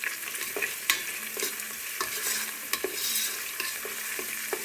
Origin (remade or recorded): remade